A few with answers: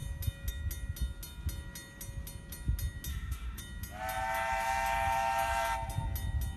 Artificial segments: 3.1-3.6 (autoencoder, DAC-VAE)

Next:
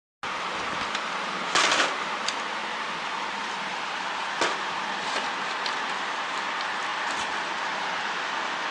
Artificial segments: none

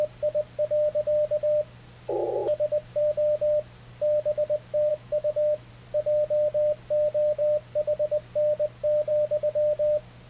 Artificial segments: 4.9-5.7 (autoencoder, DAC-VAE)

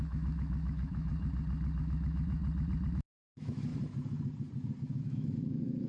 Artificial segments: 0.0-1.1 (autoencoder, DAC-VAE); 1.8-2.4; 2.9-3.7; 5.0-5.9

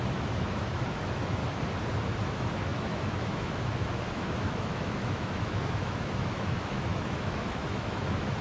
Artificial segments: 0.0-1.4 (autoencoder, DAC-VAE); 2.2-8.4

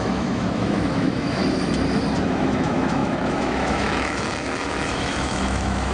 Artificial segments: 0.0-1.4 (autoencoder, DAC-VAE); 2.2-5.9